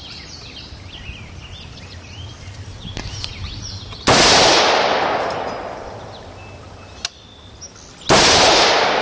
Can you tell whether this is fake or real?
real